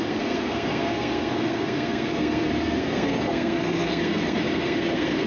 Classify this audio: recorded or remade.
remade